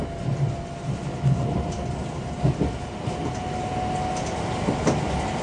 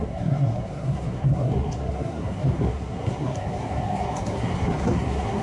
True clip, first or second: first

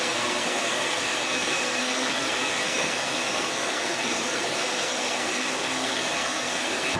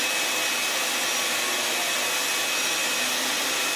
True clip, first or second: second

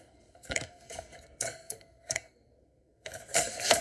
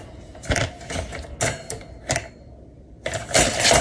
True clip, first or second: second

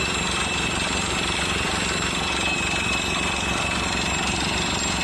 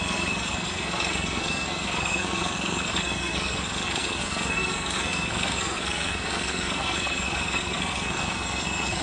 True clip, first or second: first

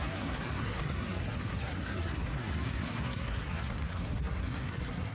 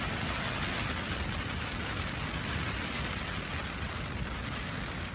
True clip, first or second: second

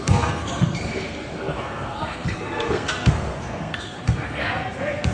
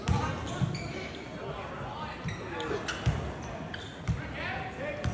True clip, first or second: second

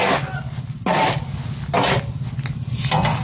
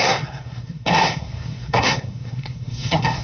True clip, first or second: first